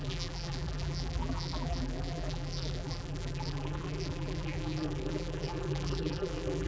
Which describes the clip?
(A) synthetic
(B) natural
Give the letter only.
A